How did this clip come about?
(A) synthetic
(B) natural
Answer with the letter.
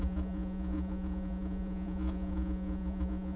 A